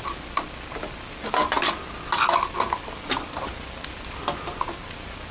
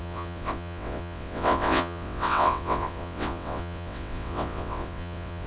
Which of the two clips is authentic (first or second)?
first